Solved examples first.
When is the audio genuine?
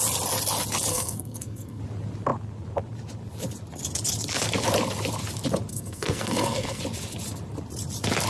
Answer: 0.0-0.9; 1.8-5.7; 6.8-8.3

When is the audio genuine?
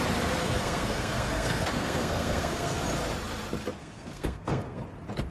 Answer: 0.0-0.4; 2.8-3.8; 4.8-5.3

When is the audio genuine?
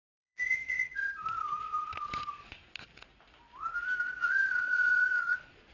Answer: 2.6-4.2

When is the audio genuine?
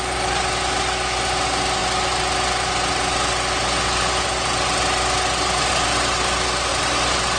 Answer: 0.0-7.4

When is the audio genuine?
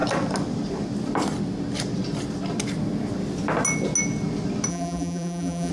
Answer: 0.0-4.7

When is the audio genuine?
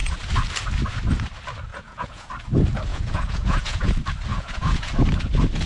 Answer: 0.0-1.7; 2.3-2.9; 3.9-4.3; 4.9-5.7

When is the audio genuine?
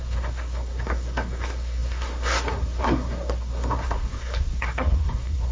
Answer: none